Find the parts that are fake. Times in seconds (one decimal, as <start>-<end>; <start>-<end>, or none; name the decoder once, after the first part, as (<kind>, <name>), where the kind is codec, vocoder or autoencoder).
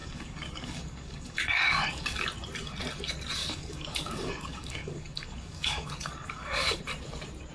0.0-2.2 (codec, DAC); 3.4-6.8